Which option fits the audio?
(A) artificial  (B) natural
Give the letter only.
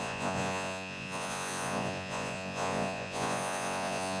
A